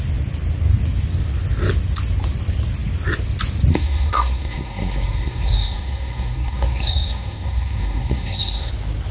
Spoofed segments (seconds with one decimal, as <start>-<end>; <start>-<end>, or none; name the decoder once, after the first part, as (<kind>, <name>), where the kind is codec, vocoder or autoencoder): 3.7-8.7 (codec, SNAC)